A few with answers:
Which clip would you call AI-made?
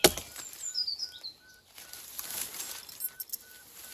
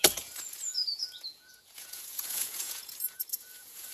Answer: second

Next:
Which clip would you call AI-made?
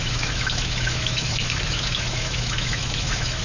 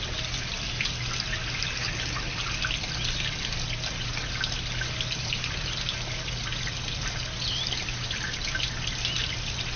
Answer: first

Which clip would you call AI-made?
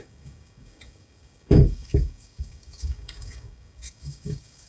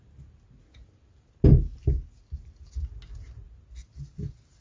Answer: first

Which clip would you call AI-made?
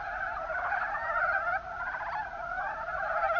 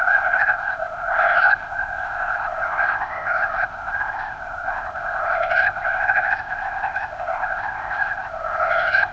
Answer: second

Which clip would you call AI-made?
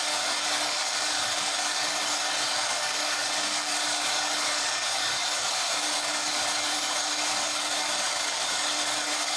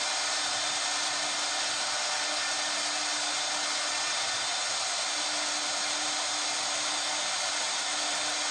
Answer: first